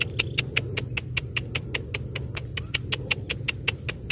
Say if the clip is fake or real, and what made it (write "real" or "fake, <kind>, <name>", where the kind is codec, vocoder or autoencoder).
real